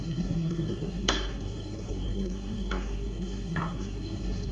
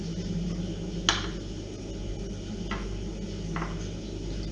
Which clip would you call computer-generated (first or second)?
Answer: first